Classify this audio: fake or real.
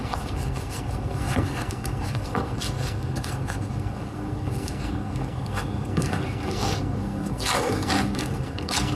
fake